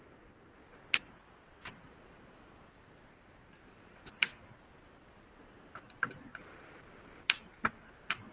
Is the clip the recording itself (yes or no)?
no